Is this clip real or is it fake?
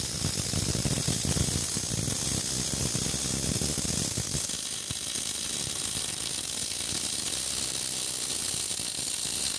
real